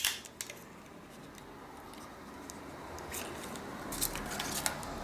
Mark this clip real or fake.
real